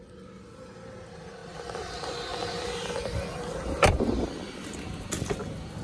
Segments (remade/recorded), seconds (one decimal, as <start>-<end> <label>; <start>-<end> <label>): 0.0-1.4 recorded; 1.4-1.9 remade; 1.9-2.3 recorded; 2.3-4.1 remade; 4.1-5.8 recorded